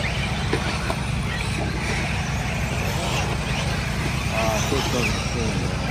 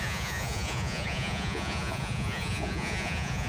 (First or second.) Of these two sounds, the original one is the first